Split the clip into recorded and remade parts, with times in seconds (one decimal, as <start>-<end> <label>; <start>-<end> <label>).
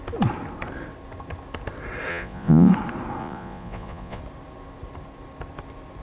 0.0-2.1 recorded; 2.1-2.7 remade; 2.7-3.2 recorded; 3.2-4.2 remade; 4.2-6.0 recorded